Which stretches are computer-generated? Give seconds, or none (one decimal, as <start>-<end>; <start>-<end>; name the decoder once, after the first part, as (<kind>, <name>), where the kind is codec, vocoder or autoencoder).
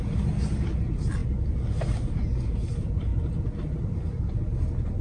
none